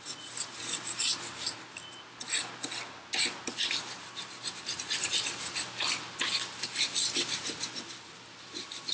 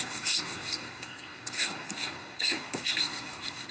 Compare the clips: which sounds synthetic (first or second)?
second